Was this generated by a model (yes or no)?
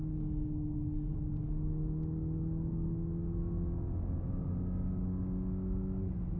no